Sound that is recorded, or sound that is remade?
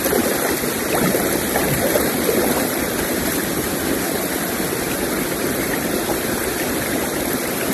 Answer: remade